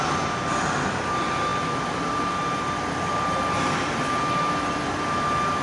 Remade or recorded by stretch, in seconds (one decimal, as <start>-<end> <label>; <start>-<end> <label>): 0.0-5.6 recorded